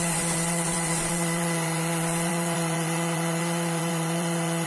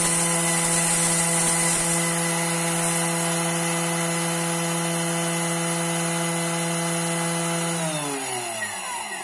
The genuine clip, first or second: second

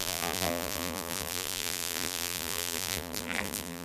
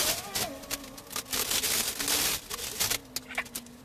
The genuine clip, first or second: second